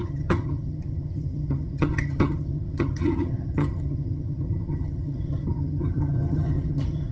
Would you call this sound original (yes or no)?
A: no